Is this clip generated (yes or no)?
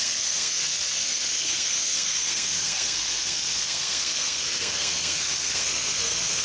yes